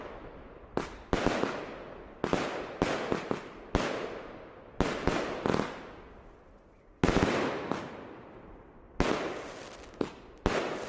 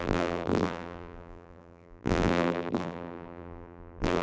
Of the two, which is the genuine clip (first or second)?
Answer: first